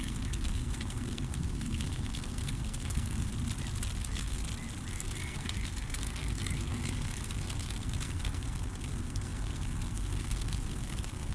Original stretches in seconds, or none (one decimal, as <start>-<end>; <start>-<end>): 3.3-4.0; 4.4-4.9

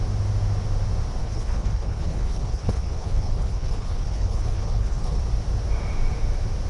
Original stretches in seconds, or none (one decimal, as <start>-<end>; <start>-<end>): 0.0-1.2; 5.2-6.7

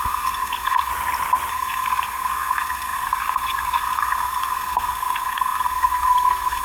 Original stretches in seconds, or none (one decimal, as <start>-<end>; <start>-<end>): 0.9-1.5

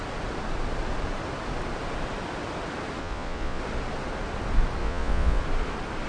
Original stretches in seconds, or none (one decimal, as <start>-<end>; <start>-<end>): 0.0-3.0; 3.6-4.8; 5.4-6.1

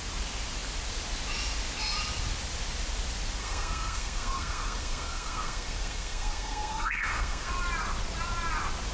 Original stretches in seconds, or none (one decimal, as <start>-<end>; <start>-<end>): 0.0-3.4; 7.5-8.9

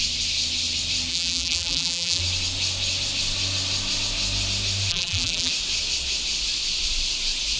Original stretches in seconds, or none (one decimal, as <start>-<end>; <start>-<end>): 0.0-1.1; 2.2-4.9; 5.5-7.6

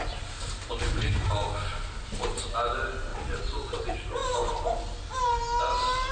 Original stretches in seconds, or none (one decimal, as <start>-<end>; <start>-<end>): 0.0-3.1; 3.8-6.1

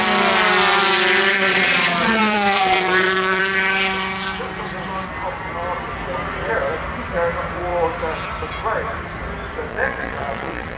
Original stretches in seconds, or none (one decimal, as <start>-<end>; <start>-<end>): 0.0-1.3; 3.4-9.7